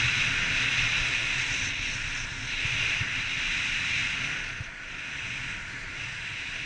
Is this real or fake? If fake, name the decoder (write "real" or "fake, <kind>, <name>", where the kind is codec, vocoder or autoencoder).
real